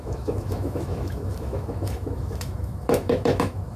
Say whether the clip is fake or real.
fake